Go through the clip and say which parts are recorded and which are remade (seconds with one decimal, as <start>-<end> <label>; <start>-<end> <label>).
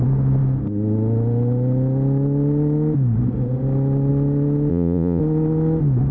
0.0-4.7 recorded; 4.7-5.2 remade; 5.2-6.1 recorded